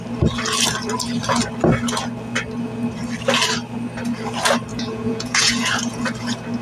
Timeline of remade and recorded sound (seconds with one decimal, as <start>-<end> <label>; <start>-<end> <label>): 0.0-4.7 recorded; 4.7-6.0 remade; 6.0-6.6 recorded